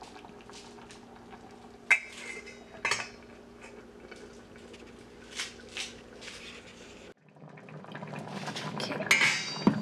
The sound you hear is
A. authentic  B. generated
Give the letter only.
A